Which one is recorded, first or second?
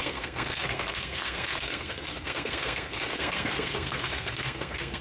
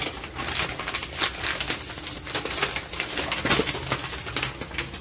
second